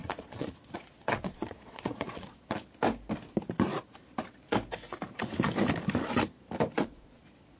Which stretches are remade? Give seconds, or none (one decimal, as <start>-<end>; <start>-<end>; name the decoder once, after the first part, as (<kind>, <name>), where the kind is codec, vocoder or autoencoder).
0.0-2.6 (vocoder, Vocos); 6.8-7.6